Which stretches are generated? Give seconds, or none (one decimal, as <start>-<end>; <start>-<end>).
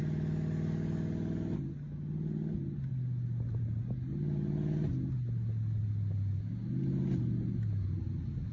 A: none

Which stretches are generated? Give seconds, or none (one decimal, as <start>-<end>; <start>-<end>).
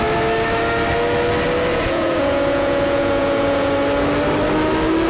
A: 1.7-3.7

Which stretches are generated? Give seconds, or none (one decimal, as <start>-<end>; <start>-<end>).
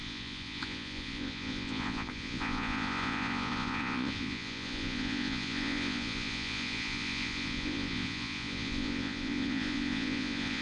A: 0.0-10.6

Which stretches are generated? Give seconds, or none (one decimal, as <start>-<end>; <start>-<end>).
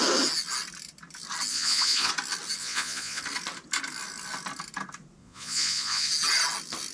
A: 1.5-2.1; 2.6-3.2; 5.2-6.1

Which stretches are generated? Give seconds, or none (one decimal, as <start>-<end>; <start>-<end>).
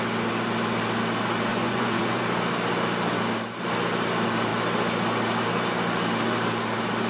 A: 1.5-2.2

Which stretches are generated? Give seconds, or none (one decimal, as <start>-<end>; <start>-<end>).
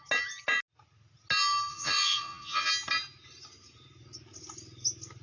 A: 1.7-2.7